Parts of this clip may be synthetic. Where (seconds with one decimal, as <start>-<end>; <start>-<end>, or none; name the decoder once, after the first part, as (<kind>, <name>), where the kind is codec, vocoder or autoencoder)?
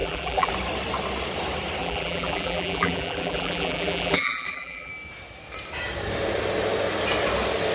0.0-0.5 (vocoder, BigVGAN v2); 1.8-4.9